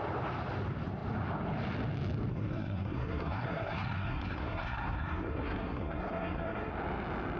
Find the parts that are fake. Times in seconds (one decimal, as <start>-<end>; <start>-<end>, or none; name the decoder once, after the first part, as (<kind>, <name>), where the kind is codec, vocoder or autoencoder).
2.3-6.7 (codec, SNAC)